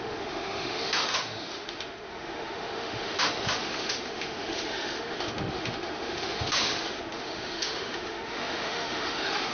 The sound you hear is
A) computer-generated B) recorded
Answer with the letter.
A